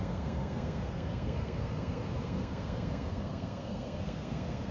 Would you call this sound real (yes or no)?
no